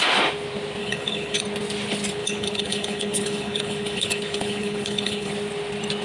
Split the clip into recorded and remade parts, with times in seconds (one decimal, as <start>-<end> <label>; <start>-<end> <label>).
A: 0.0-0.8 recorded; 0.8-1.4 remade; 1.4-2.2 recorded; 2.2-5.3 remade; 5.3-6.0 recorded